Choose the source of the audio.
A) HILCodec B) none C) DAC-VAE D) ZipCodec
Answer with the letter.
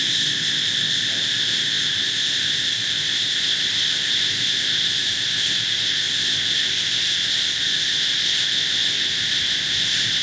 D